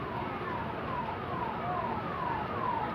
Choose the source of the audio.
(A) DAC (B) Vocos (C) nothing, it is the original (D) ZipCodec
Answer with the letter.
C